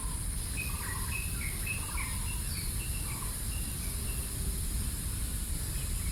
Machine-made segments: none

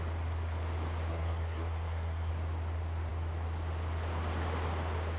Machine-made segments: 1.1-2.3 (codec, SNAC)